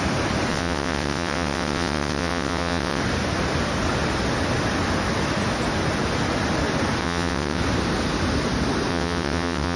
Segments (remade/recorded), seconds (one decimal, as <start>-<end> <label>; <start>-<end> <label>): 0.0-0.5 recorded; 0.5-3.0 remade; 3.0-7.0 recorded; 7.0-7.6 remade; 7.6-8.9 recorded; 8.9-9.8 remade